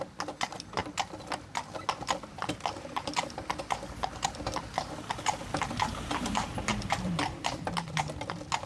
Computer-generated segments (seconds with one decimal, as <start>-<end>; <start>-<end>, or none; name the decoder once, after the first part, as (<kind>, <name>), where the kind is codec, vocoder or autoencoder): 6.7-8.0 (vocoder, BigVGAN v2)